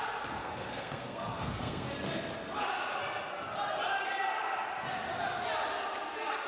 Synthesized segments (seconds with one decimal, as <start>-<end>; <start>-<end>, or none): 0.4-1.9